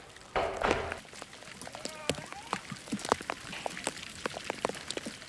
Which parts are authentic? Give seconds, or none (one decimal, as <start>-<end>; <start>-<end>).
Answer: 0.0-5.3